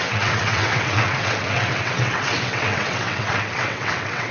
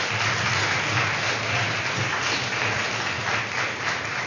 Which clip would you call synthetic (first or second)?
first